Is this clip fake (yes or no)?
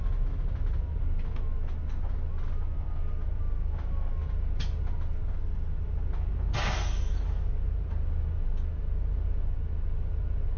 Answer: no